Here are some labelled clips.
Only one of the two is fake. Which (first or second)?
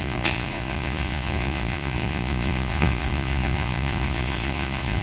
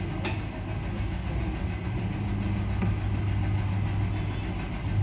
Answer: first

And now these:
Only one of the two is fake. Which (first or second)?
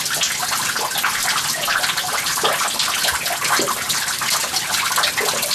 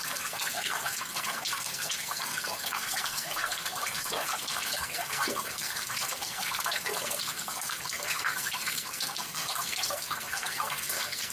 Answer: second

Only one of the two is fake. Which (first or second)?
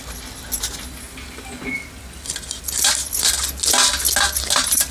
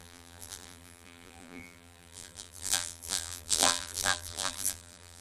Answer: second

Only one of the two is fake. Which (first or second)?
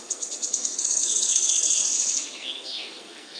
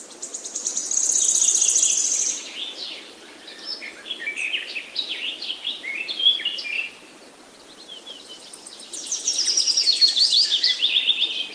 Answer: first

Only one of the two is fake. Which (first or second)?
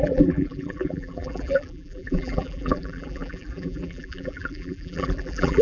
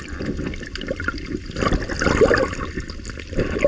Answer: first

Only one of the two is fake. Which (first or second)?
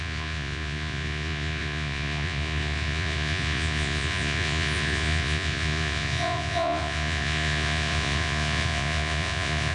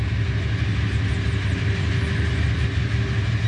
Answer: first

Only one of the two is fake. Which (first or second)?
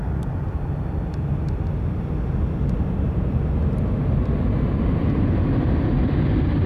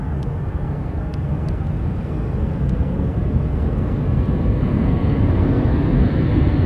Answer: second